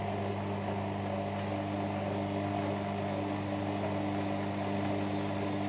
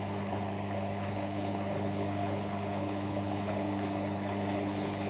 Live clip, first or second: first